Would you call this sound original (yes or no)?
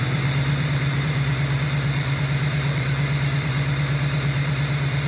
no